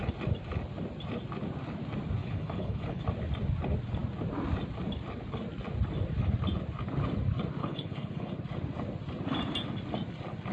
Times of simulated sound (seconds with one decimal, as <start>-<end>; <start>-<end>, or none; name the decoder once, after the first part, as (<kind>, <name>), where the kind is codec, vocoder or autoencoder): 2.2-3.0 (codec, HILCodec); 7.6-8.3